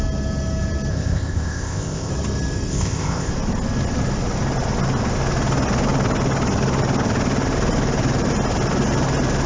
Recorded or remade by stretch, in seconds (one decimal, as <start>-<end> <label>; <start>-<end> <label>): 0.0-0.9 recorded; 0.9-2.1 remade; 2.1-2.7 recorded; 2.7-3.3 remade; 3.3-9.5 recorded

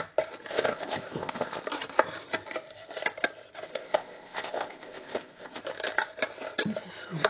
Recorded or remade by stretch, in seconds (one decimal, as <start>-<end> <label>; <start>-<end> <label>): 0.0-0.5 recorded; 0.5-1.6 remade; 1.6-3.7 recorded; 3.7-5.6 remade; 5.6-7.3 recorded

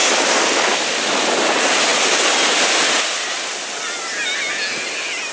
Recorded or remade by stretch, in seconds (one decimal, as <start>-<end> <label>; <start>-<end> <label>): 0.0-5.3 recorded

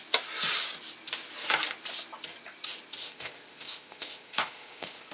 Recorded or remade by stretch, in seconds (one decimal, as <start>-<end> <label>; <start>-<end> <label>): 0.0-3.0 recorded; 3.0-5.1 remade

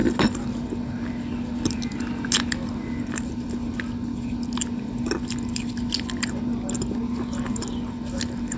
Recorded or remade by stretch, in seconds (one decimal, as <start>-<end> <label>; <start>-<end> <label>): 0.0-8.6 recorded

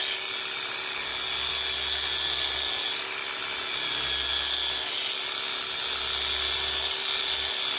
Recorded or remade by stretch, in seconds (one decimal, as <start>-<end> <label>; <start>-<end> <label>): 0.0-7.8 recorded